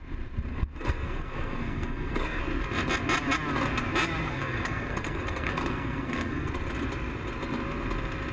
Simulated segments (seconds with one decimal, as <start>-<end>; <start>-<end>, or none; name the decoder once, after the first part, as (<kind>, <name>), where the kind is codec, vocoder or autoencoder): 0.5-2.4 (codec, SNAC); 4.2-6.5

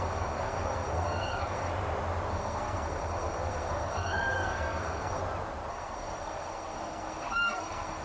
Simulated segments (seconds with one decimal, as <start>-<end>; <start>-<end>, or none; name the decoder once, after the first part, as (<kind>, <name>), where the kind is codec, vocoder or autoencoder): 0.0-1.7 (codec, SNAC); 2.3-5.2; 5.7-8.0

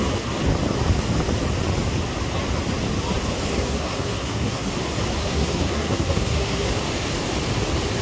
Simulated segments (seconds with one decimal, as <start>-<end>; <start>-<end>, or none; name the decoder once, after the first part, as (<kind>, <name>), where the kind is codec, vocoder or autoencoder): 3.5-4.7 (codec, SNAC); 5.2-6.7

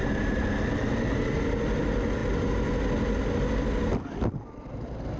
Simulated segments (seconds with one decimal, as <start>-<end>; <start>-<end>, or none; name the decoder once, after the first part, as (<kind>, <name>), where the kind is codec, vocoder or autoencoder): none

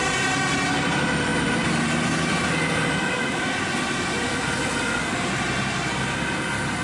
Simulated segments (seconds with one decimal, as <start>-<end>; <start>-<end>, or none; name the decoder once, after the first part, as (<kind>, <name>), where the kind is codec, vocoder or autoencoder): none

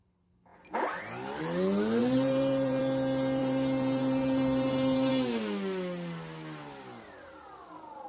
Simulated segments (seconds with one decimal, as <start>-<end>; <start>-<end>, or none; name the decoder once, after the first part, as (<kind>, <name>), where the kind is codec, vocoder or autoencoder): 2.0-2.8 (vocoder, BigVGAN v2); 3.4-5.1